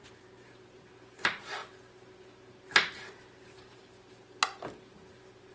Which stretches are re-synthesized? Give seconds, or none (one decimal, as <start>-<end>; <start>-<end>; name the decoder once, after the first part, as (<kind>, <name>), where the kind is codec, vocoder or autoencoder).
none